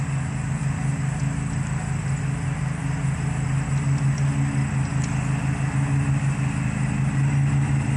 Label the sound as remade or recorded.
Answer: recorded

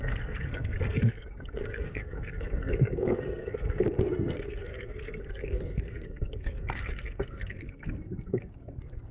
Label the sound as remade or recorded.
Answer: remade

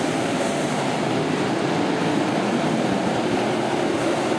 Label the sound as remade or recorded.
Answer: recorded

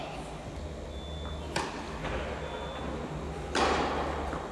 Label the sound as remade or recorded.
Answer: recorded